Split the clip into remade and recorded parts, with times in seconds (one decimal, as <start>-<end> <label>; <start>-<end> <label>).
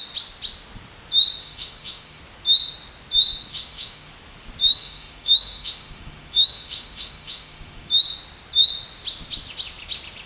0.0-1.4 recorded; 1.4-2.2 remade; 2.2-3.5 recorded; 3.5-4.1 remade; 4.1-4.7 recorded; 4.7-7.9 remade; 7.9-10.3 recorded